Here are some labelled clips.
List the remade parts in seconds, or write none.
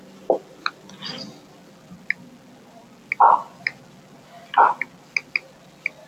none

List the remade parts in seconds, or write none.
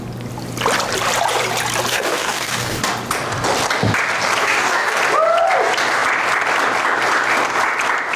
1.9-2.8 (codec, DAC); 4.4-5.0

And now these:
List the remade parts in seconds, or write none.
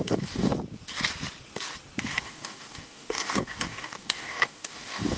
0.0-0.5 (codec, DAC); 2.0-5.2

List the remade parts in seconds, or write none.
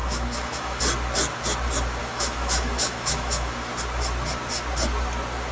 0.0-0.8 (autoencoder, DAC-VAE); 2.0-3.7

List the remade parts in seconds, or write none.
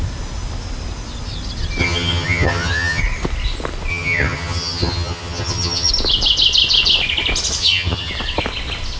1.8-3.0 (vocoder, HiFi-GAN); 3.9-5.9; 7.6-8.1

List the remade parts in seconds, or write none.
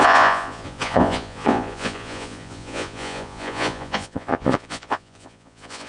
0.0-5.9 (vocoder, Vocos)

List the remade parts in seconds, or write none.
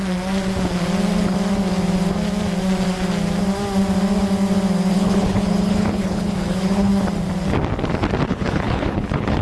4.9-6.9 (codec, HILCodec); 8.3-9.4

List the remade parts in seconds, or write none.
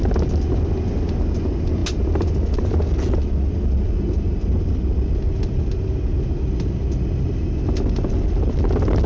none